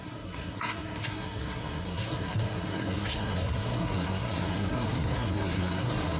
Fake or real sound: fake